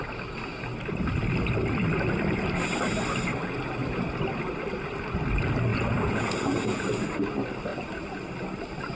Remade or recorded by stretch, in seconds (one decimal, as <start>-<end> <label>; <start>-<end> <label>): 0.0-5.7 recorded; 5.7-6.8 remade; 6.8-9.0 recorded